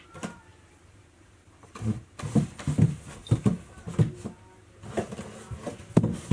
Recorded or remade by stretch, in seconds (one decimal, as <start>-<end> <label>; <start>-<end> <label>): 0.0-0.5 recorded; 0.5-2.2 remade; 2.2-6.3 recorded